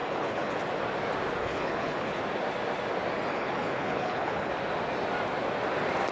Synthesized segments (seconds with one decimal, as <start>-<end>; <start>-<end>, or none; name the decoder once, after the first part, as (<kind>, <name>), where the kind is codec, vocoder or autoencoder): 0.0-0.5 (codec, HILCodec); 1.4-2.2; 3.3-4.5